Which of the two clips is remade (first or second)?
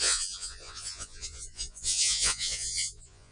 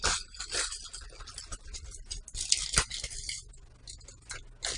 first